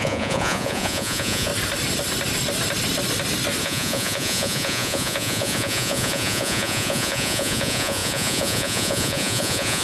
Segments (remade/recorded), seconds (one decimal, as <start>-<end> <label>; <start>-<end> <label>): 0.0-1.5 remade; 1.5-3.6 recorded; 3.6-9.8 remade